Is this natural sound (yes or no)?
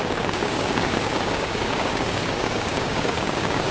no